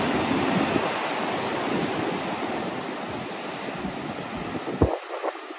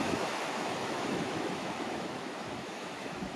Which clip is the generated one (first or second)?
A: second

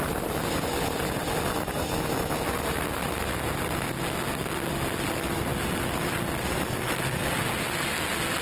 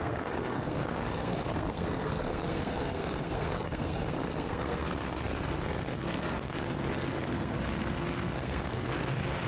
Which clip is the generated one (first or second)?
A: second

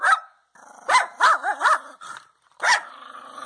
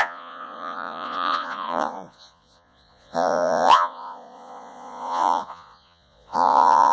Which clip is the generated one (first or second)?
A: second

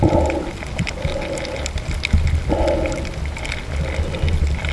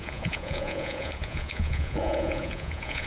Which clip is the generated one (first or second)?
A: second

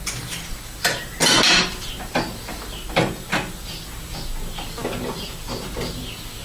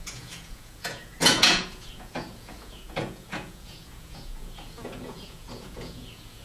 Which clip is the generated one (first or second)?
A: second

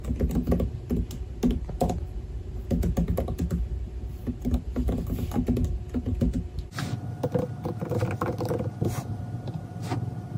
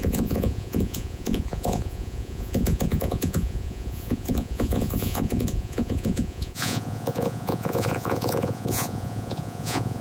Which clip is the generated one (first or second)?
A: second